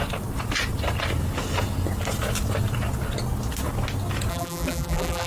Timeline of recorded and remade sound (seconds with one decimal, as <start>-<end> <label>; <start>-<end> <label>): 0.0-4.3 recorded; 4.3-5.3 remade